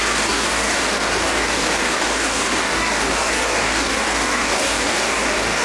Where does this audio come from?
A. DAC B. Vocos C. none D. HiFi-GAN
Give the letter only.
A